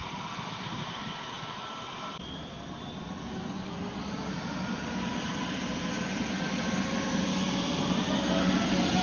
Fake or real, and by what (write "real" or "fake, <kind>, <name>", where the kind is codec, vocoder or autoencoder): real